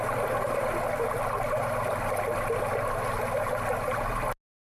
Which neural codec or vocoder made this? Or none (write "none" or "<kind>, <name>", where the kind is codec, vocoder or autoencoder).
none